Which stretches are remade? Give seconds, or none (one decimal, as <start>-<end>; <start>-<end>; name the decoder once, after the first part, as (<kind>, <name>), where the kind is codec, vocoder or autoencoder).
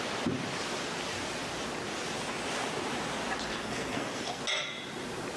3.5-4.4 (codec, SNAC)